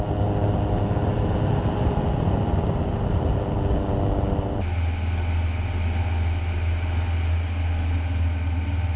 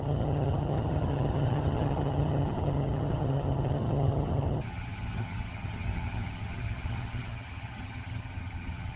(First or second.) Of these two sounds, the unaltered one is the first